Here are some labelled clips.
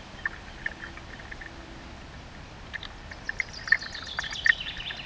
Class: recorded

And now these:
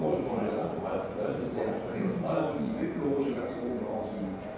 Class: remade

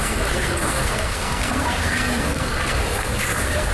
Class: remade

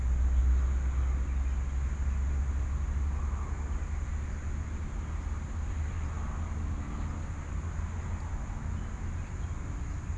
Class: recorded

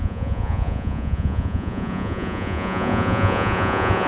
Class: remade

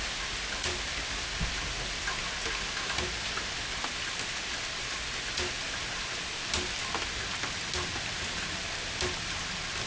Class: recorded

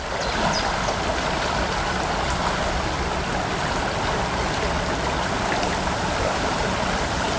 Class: recorded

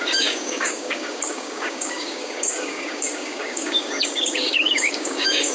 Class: remade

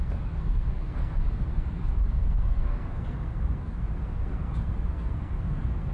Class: remade